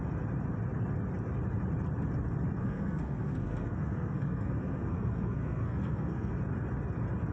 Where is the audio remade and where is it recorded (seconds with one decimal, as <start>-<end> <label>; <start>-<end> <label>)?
0.0-2.6 recorded; 2.6-6.3 remade; 6.3-7.3 recorded